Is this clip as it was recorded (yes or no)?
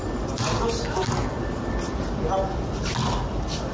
yes